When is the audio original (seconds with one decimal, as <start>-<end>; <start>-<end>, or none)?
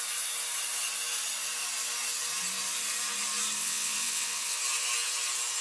0.0-3.6; 4.6-5.6